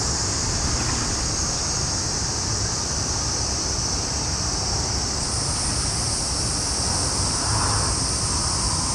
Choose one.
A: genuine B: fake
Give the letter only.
A